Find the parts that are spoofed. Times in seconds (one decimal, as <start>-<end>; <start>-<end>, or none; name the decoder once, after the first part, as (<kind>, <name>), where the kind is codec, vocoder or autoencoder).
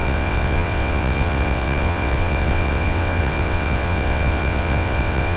0.0-5.4 (vocoder, WaveNeXt)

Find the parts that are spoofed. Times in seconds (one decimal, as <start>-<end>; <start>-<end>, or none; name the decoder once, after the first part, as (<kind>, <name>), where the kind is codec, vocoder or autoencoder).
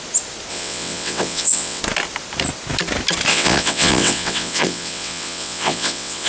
0.5-1.8 (vocoder, WaveNeXt); 3.3-6.3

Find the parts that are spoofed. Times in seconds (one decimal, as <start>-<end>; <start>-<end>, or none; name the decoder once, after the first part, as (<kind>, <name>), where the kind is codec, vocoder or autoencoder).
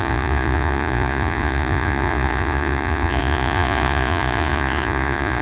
0.0-5.4 (vocoder, Vocos)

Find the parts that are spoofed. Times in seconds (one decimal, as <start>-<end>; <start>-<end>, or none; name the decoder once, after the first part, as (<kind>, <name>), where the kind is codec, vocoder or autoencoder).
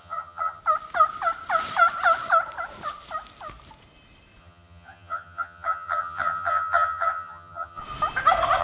0.0-0.6 (vocoder, HiFi-GAN); 4.4-7.8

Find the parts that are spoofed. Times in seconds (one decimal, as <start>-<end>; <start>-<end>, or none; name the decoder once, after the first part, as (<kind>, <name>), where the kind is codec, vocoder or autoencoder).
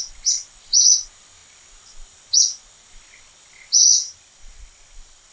none